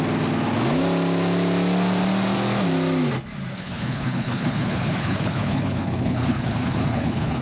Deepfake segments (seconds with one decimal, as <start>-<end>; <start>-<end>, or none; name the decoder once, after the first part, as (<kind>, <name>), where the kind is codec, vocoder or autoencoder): 3.5-7.4 (codec, HILCodec)